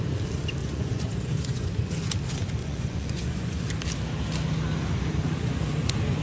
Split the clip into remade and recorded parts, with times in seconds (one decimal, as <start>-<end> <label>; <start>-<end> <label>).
0.0-0.6 recorded; 0.6-2.1 remade; 2.1-2.6 recorded; 2.6-3.7 remade; 3.7-6.2 recorded